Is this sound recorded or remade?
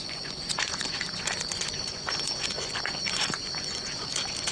remade